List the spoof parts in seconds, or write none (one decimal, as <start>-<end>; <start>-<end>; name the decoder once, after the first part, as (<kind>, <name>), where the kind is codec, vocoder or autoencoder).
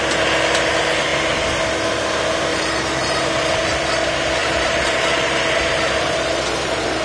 2.5-3.6 (vocoder, BigVGAN v2); 4.4-7.0